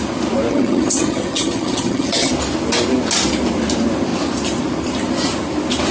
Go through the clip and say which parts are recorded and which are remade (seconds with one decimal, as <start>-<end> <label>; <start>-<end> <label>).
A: 0.0-0.5 recorded; 0.5-2.3 remade; 2.3-5.9 recorded